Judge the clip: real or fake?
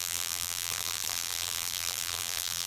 fake